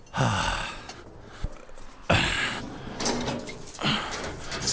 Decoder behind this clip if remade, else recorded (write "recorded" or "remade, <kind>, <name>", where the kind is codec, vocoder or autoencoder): recorded